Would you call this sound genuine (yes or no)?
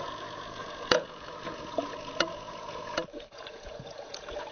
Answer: no